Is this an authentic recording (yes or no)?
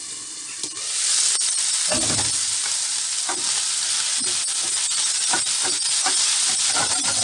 yes